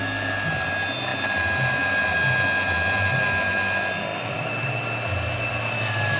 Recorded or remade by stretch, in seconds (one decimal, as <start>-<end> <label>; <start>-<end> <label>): 0.0-6.2 recorded